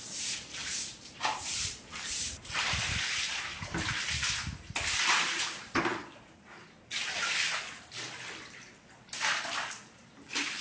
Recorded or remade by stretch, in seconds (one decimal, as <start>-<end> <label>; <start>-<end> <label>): 0.0-0.5 recorded; 0.5-3.8 remade; 3.8-10.0 recorded; 10.0-10.6 remade